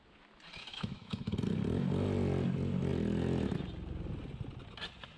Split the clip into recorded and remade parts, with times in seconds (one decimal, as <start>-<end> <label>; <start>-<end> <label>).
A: 0.0-0.7 recorded; 0.7-1.3 remade; 1.3-5.2 recorded